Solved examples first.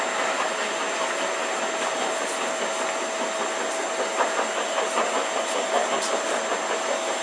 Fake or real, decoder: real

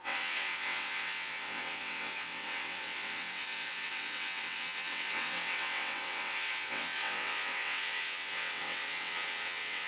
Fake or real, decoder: fake, vocoder, WaveNeXt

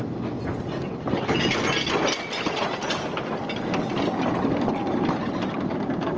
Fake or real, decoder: real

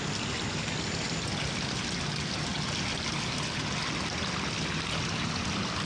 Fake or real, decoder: real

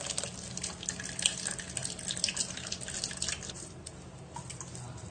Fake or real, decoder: real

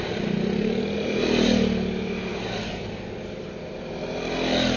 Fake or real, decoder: real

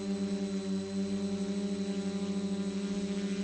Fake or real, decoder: real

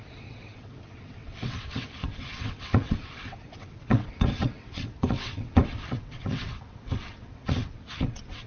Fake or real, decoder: fake, vocoder, WaveNeXt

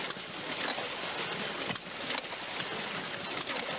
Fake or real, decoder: real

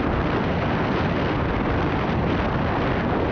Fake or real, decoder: real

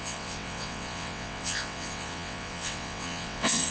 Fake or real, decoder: fake, vocoder, WaveNeXt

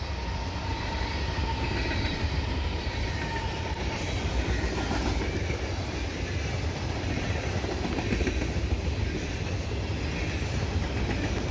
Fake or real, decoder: real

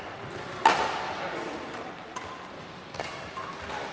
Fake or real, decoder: real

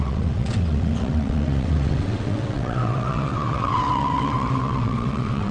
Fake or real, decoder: fake, vocoder, WaveNeXt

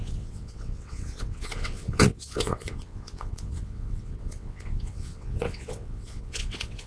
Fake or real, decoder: fake, vocoder, WaveNeXt